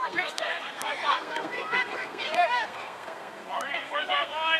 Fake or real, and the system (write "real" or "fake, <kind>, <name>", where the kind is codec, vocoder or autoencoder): fake, codec, SNAC